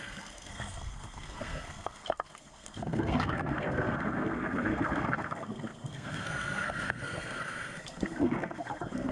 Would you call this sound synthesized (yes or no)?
yes